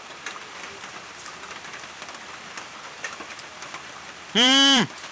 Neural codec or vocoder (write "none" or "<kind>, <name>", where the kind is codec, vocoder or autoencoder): vocoder, BigVGAN v2